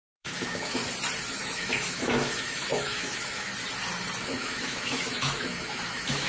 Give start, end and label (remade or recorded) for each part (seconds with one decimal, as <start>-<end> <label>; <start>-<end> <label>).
0.0-0.8 remade; 0.8-1.3 recorded; 1.3-3.5 remade; 3.5-4.2 recorded; 4.2-6.3 remade